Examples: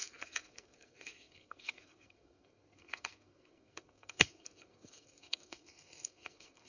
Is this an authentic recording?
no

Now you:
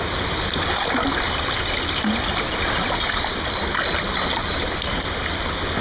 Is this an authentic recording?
yes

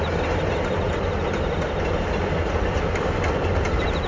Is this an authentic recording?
yes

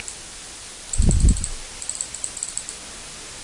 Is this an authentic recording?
yes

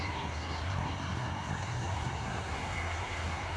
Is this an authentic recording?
no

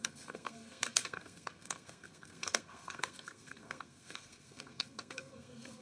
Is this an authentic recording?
no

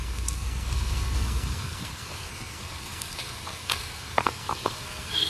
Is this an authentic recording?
no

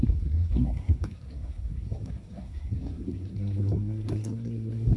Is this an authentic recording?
no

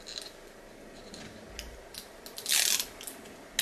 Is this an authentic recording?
yes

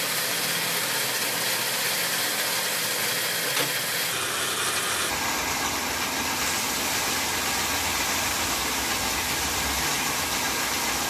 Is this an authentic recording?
yes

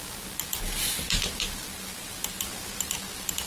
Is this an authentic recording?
yes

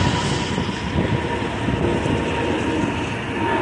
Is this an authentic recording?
yes